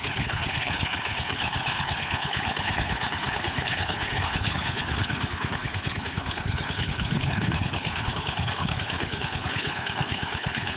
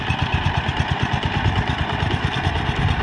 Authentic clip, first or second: second